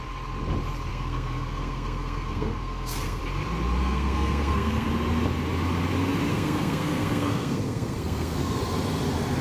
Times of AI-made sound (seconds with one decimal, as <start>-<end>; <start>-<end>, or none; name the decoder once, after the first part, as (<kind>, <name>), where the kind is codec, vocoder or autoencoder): 0.9-3.2 (codec, SNAC); 3.8-4.9; 6.3-8.6